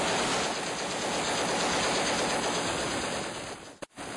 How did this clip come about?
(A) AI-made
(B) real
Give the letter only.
B